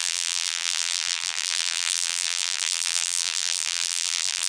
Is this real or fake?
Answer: fake